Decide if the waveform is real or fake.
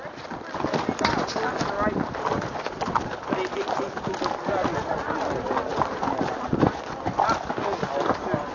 real